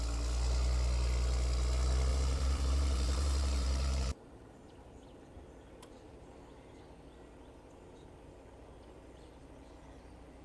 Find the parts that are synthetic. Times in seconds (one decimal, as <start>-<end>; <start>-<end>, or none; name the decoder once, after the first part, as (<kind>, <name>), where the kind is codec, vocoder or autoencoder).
2.1-6.8 (vocoder, BigVGAN v2)